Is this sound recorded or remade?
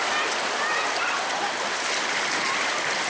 recorded